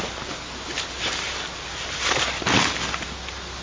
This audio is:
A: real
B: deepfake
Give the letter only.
A